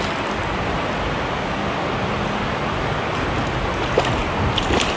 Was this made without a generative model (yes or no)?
yes